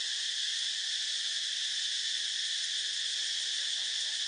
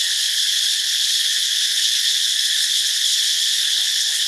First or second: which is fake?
second